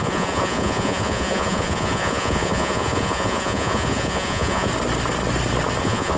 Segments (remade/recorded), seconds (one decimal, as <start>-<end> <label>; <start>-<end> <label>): 0.0-4.7 remade; 4.7-5.8 recorded; 5.8-6.2 remade